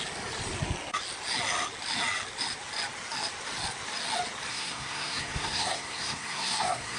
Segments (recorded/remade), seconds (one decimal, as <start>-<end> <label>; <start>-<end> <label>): 0.0-4.5 recorded; 4.5-7.0 remade